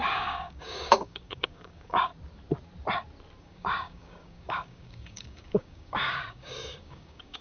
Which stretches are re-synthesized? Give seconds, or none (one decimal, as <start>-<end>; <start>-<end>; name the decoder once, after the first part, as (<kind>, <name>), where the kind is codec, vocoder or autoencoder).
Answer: 0.0-2.1 (codec, DAC); 3.4-7.4